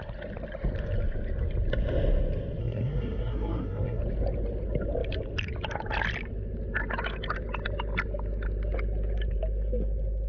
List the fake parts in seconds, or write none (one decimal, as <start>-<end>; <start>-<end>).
2.6-4.0